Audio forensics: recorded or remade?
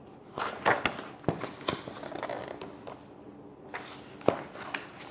recorded